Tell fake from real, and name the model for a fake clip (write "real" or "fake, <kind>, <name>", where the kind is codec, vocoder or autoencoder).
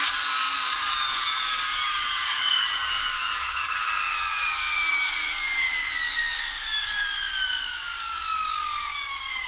fake, codec, DAC